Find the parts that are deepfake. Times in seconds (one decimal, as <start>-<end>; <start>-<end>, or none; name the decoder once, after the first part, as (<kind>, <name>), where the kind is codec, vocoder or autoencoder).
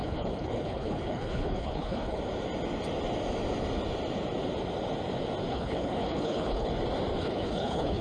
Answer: 0.0-2.2 (codec, HILCodec); 5.5-6.7; 7.2-8.0